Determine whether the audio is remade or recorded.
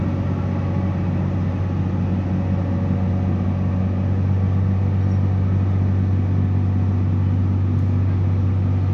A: recorded